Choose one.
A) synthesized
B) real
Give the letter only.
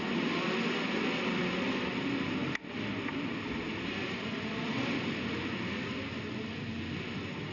B